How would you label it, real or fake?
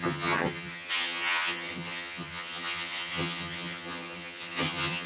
fake